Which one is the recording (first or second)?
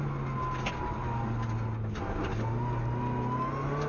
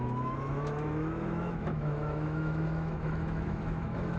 first